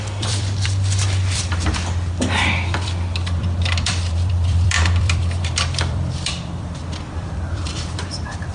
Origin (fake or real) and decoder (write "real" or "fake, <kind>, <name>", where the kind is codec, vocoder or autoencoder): fake, vocoder, BigVGAN v2